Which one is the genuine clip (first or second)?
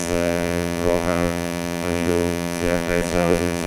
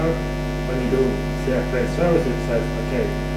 second